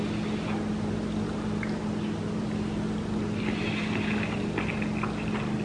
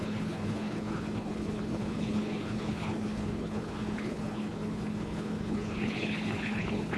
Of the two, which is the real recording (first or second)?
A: first